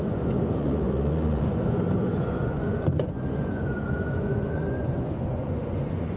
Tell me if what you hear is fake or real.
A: fake